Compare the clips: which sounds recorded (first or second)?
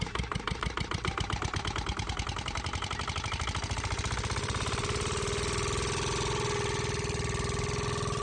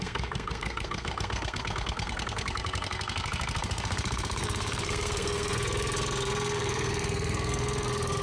first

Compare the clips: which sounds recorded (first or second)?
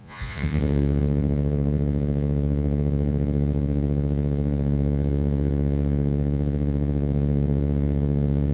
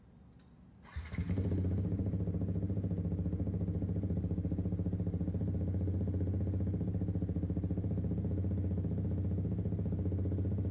second